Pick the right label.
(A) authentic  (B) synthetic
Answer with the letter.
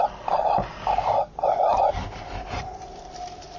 A